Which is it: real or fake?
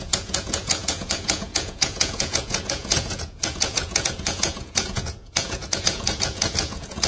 fake